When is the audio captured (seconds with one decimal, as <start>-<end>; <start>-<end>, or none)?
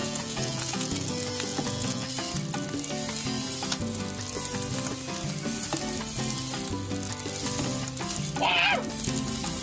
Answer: 1.1-1.5; 2.1-9.6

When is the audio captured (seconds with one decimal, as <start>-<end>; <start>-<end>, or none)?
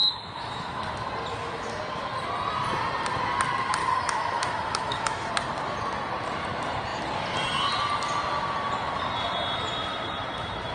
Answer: 0.8-1.3; 1.8-3.8; 5.3-10.7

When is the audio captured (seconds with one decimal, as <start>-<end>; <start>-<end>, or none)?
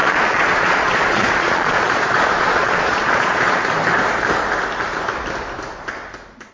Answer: 3.6-6.5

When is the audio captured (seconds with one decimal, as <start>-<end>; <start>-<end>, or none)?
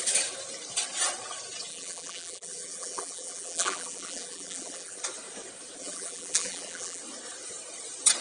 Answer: 0.0-1.7; 5.0-5.8; 7.0-8.2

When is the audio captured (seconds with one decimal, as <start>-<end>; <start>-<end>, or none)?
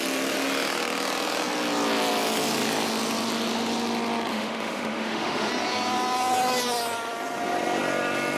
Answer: 0.0-4.3; 5.5-8.4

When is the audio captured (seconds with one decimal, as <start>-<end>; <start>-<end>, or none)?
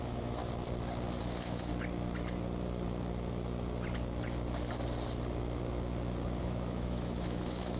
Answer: 0.4-1.2; 1.7-6.4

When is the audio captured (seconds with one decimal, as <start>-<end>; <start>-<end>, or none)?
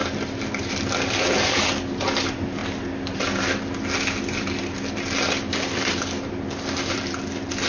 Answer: 0.0-7.7